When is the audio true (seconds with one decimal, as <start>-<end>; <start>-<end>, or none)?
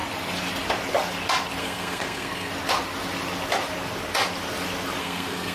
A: 0.0-1.6; 2.5-5.0